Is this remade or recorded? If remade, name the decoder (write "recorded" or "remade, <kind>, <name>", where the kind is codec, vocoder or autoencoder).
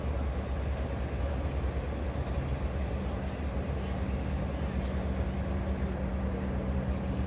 recorded